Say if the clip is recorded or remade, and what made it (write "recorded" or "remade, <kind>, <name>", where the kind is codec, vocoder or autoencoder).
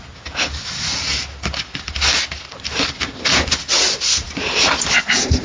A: recorded